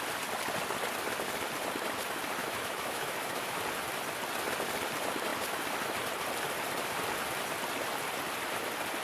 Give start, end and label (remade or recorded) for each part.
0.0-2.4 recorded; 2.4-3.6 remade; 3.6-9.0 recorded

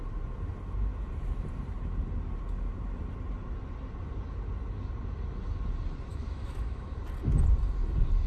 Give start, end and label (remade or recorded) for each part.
0.0-6.1 recorded; 6.1-7.0 remade; 7.0-8.3 recorded